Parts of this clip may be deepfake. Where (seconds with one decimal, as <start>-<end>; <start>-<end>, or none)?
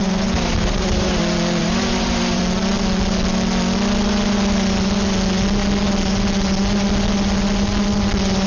0.0-1.2; 1.6-2.4